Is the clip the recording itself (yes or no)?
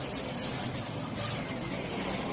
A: yes